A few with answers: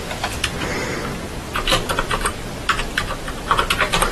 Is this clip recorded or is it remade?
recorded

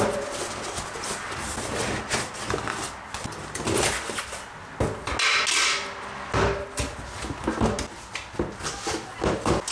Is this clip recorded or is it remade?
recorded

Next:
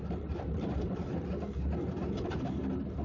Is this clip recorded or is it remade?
remade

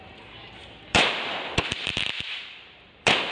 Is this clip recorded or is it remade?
remade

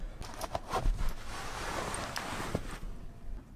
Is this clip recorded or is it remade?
recorded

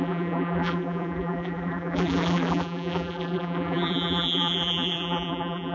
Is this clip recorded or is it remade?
remade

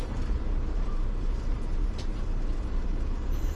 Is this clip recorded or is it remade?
remade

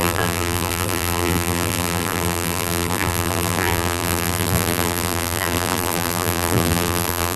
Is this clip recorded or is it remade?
remade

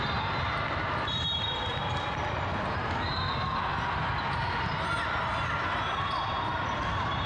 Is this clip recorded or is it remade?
recorded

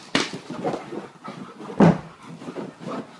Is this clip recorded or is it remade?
recorded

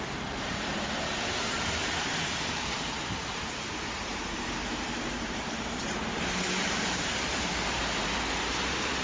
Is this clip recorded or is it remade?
remade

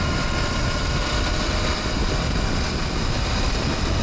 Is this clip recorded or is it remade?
recorded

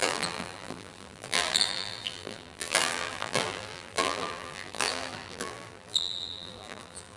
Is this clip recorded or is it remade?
remade